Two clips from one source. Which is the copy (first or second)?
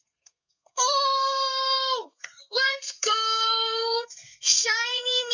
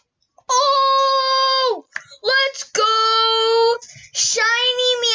first